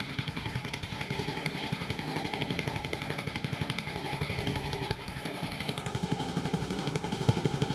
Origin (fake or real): fake